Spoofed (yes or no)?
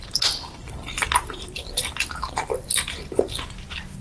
no